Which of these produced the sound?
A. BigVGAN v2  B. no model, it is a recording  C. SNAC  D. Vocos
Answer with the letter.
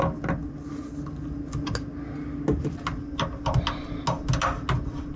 B